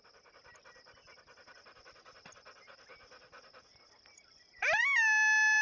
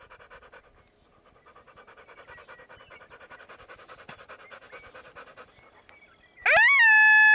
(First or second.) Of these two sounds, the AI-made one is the first